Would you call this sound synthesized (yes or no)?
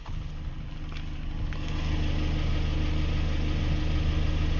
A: no